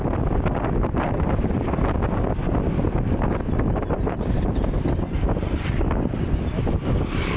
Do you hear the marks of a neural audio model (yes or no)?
no